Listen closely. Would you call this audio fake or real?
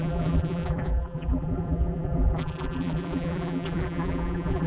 fake